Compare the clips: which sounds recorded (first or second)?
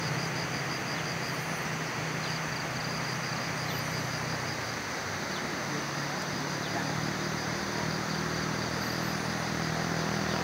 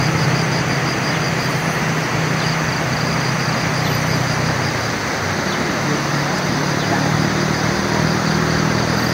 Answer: first